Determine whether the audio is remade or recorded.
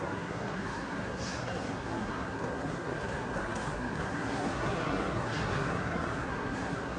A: remade